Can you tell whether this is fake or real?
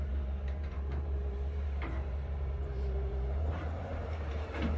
fake